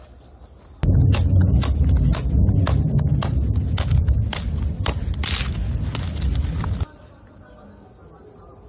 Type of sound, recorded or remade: recorded